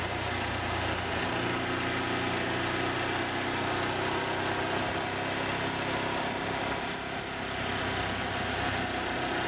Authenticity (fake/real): real